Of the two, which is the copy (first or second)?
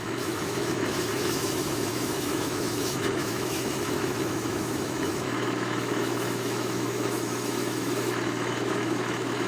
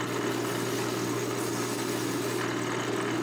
first